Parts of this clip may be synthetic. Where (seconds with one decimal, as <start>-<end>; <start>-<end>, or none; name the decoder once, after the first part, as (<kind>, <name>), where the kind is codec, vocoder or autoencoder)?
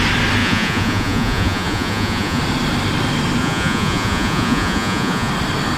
0.4-2.4 (vocoder, Vocos); 3.4-5.3